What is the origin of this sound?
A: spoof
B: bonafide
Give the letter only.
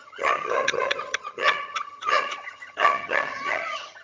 A